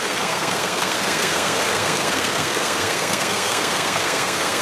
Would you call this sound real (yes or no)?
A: no